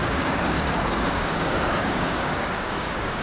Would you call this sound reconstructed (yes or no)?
yes